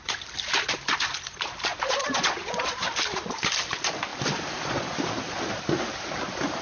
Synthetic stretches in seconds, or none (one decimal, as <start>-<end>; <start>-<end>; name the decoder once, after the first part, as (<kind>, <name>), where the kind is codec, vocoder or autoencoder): 1.7-2.9 (vocoder, Vocos)